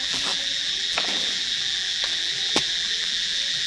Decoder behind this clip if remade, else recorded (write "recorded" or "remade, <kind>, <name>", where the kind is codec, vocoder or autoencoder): remade, vocoder, BigVGAN v2